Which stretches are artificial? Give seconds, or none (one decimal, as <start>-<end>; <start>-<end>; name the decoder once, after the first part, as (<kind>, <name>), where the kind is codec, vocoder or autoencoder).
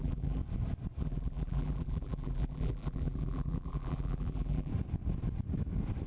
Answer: 0.0-0.4 (vocoder, BigVGAN v2); 1.0-4.7